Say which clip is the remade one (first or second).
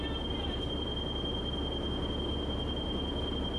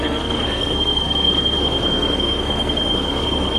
second